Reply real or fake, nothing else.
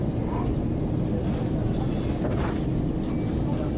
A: real